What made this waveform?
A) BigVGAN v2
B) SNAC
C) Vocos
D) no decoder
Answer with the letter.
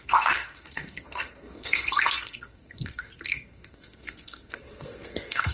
B